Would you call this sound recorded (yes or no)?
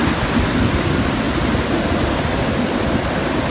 yes